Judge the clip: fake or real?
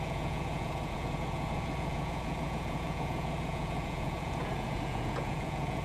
fake